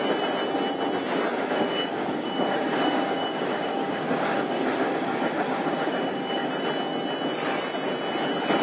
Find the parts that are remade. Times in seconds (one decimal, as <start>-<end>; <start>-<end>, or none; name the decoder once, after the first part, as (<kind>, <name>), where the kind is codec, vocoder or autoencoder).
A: 1.3-6.5 (codec, DAC)